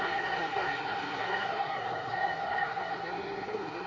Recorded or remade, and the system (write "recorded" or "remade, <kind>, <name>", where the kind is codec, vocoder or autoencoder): remade, codec, SNAC